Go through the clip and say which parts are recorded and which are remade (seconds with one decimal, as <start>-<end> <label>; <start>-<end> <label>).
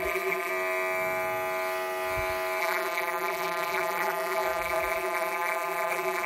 0.0-0.5 remade; 0.5-2.6 recorded; 2.6-6.3 remade